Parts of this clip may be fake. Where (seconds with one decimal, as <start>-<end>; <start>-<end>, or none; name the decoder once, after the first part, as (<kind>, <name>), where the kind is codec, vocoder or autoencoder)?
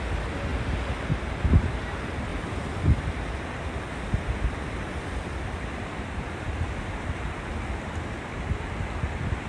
2.3-7.5 (vocoder, BigVGAN v2)